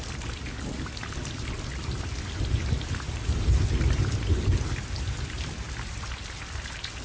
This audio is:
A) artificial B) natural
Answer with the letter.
B